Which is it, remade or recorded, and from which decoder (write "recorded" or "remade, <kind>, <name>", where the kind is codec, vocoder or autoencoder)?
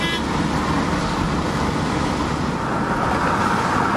recorded